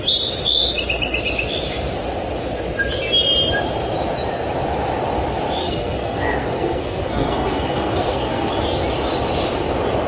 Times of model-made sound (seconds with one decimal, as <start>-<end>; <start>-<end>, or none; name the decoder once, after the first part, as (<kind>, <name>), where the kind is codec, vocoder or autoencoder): 5.6-8.5 (codec, SNAC)